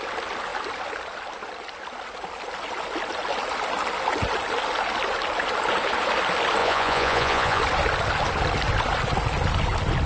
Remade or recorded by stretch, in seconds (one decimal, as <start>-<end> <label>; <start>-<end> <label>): 0.0-6.6 recorded; 6.6-7.6 remade; 7.6-10.1 recorded